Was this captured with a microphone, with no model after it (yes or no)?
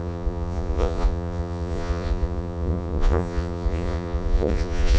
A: no